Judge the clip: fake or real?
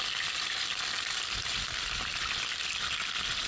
real